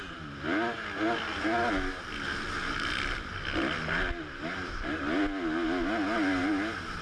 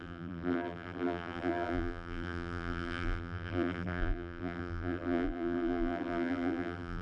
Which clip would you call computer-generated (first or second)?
second